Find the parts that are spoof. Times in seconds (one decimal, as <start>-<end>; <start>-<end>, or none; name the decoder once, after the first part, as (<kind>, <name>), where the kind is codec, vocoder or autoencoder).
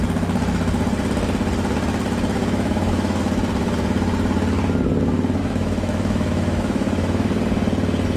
2.4-3.2 (autoencoder, DAC-VAE); 5.4-7.3